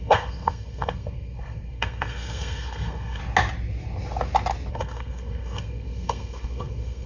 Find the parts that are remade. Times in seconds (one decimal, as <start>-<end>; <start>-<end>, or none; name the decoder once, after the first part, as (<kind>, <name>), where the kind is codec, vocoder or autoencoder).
0.0-3.2 (codec, SNAC); 4.7-7.1